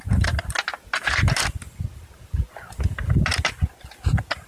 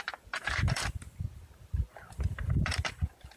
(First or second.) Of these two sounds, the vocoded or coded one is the second